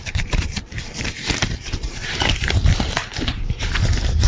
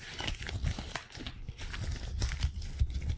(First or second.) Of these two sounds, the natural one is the second